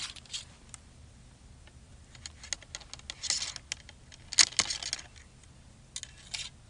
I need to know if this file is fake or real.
real